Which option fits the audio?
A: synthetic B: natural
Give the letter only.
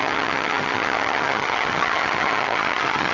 A